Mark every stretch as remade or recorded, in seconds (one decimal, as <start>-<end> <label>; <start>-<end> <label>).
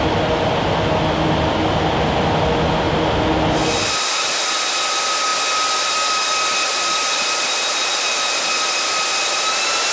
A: 0.0-9.9 recorded